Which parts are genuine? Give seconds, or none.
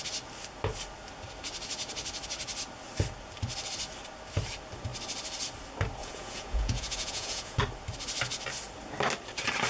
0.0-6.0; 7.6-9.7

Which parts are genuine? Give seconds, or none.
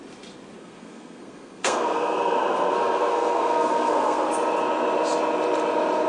0.0-0.6; 4.3-6.1